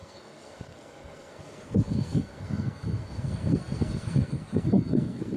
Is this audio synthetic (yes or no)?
yes